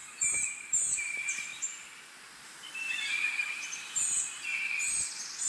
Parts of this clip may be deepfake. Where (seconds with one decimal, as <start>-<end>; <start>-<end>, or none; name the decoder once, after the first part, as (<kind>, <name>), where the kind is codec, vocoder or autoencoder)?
0.0-1.5 (vocoder, BigVGAN v2); 3.0-4.2; 4.9-5.5